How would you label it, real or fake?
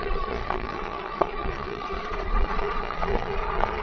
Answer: fake